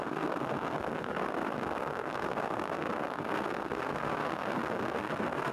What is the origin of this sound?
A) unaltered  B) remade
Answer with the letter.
B